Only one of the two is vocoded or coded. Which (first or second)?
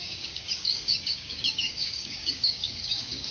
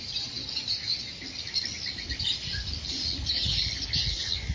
first